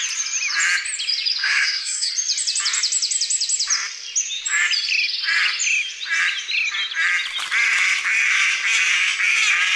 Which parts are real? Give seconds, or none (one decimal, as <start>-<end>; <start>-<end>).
0.0-1.4; 2.1-9.8